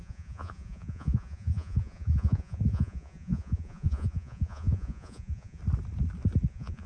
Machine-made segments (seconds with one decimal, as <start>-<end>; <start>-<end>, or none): 0.0-5.6; 6.5-6.9